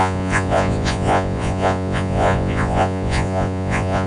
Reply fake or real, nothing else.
fake